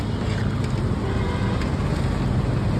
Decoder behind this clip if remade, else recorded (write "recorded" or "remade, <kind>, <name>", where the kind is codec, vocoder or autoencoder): recorded